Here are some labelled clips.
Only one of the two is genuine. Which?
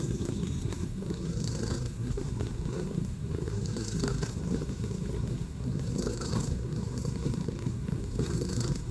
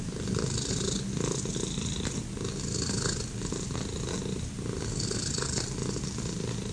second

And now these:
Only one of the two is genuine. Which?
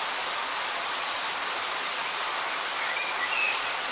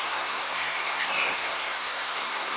first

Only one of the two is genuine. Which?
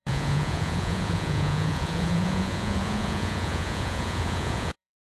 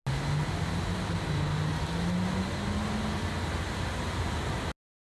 second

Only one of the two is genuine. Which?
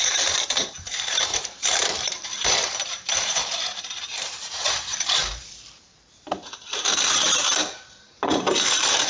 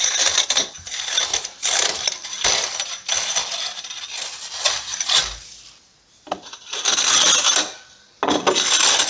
second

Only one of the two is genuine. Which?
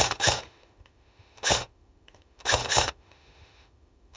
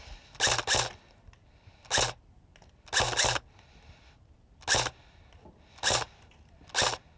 second